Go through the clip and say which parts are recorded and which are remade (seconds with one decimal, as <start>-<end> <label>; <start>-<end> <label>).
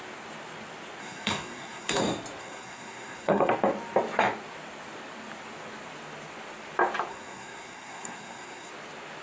0.0-1.0 recorded; 1.0-2.0 remade; 2.0-2.4 recorded; 2.4-3.5 remade; 3.5-7.1 recorded; 7.1-8.7 remade; 8.7-9.2 recorded